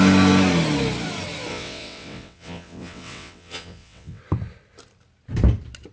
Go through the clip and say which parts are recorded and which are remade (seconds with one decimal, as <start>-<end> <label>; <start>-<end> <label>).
0.0-1.5 recorded; 1.5-4.2 remade; 4.2-5.9 recorded